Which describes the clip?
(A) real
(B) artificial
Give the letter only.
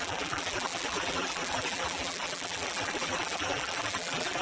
B